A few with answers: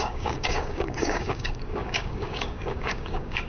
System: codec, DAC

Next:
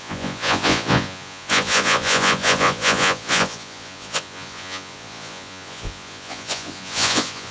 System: vocoder, Vocos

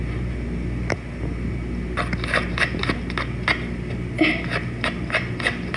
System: none